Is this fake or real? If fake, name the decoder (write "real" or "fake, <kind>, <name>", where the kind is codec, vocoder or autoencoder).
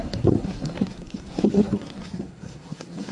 fake, codec, SNAC